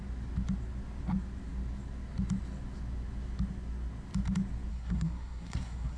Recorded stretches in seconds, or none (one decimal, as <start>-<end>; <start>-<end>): 0.0-4.7